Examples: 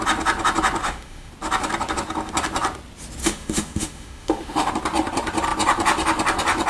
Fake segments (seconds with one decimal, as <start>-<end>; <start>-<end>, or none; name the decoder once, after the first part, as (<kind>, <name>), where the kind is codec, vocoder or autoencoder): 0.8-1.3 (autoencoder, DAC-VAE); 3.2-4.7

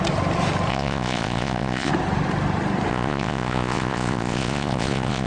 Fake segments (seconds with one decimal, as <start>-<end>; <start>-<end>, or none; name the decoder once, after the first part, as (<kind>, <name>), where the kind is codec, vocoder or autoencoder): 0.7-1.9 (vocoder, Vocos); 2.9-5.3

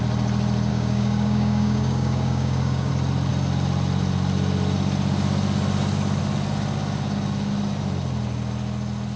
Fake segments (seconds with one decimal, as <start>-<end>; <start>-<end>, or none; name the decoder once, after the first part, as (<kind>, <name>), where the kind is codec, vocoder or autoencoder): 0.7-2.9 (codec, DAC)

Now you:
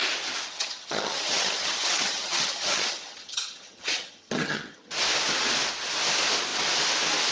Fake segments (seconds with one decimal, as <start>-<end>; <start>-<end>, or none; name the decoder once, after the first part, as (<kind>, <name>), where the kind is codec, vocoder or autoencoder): 0.5-4.9 (vocoder, HiFi-GAN)

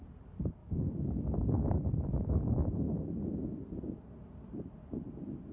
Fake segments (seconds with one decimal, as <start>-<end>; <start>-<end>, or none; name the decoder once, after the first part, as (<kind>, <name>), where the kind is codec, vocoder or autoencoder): 0.6-2.6 (codec, DAC)

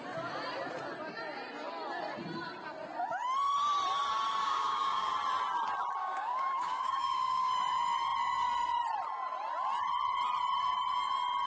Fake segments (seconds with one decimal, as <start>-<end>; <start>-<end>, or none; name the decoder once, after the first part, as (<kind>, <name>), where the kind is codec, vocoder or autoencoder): 4.4-5.1 (codec, DAC); 6.0-7.5